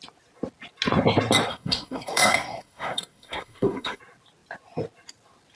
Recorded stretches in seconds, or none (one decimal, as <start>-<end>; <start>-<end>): 0.0-1.5; 4.0-5.6